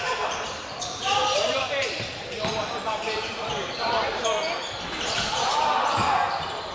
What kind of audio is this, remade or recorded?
remade